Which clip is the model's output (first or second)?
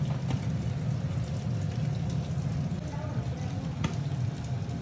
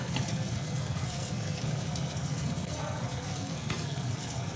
second